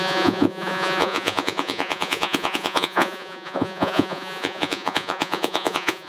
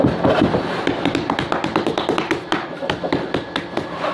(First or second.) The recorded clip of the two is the second